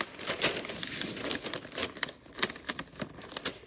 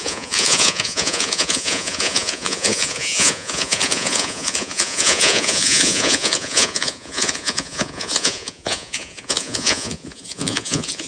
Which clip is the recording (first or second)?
first